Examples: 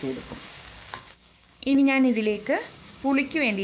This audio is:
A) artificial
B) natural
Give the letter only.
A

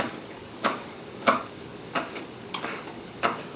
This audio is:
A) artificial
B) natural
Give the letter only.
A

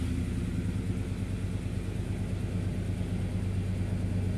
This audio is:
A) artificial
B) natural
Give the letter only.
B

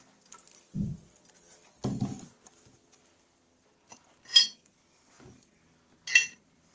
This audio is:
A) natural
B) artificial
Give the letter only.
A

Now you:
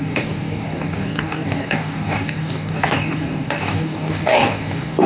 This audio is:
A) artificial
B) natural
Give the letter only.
A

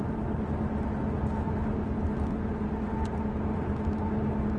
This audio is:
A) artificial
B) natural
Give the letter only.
B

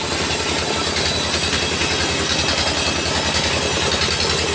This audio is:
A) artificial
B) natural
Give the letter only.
B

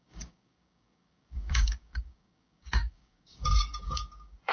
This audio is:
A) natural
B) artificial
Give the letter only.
B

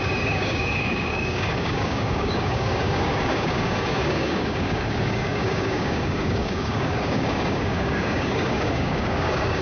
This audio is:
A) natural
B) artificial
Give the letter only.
B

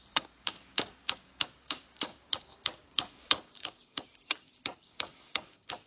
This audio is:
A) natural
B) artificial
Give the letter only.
B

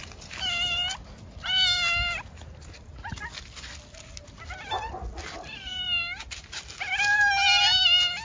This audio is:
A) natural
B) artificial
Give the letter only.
A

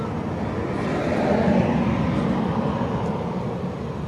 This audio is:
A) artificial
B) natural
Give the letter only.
B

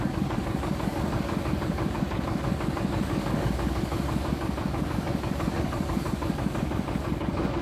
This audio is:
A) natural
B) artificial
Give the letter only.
B